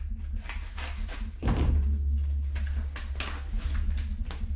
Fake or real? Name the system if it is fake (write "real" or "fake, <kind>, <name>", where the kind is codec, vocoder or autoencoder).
real